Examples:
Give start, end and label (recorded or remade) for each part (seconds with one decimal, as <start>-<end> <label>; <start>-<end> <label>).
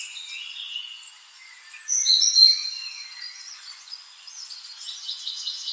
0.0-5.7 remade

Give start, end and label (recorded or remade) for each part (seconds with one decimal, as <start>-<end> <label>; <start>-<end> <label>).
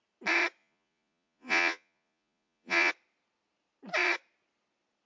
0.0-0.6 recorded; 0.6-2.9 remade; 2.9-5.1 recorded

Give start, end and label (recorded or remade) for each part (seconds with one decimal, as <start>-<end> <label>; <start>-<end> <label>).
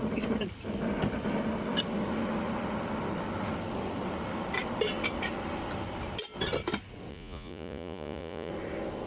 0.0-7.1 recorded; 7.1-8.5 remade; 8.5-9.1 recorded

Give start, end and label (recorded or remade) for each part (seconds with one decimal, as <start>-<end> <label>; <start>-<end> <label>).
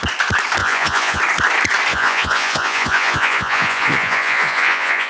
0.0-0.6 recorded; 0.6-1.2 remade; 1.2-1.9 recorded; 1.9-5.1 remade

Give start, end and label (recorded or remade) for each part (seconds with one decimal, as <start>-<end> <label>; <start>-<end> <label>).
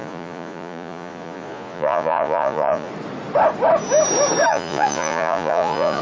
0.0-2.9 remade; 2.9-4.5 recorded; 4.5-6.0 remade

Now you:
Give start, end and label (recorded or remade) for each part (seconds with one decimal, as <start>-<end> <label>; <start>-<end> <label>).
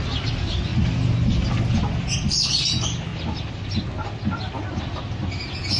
0.0-5.8 recorded